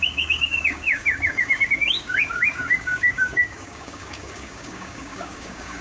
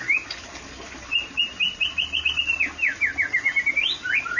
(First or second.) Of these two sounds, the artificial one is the first